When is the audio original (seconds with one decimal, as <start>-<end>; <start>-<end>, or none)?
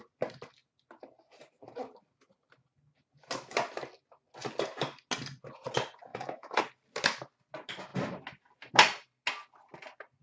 0.0-6.1; 6.6-10.2